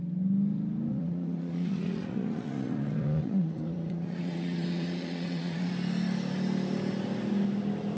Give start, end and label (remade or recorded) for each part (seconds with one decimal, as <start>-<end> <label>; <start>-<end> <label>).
0.0-0.9 recorded; 0.9-5.7 remade; 5.7-8.0 recorded